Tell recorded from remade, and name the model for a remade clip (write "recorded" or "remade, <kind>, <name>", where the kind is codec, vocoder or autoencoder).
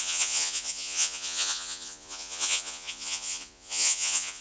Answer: remade, vocoder, Vocos